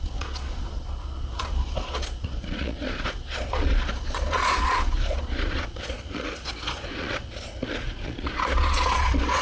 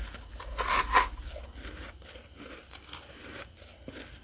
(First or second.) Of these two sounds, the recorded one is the second